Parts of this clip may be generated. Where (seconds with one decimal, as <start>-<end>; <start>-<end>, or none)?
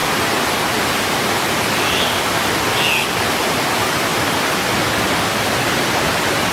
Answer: none